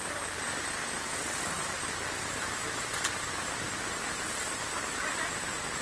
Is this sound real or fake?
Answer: real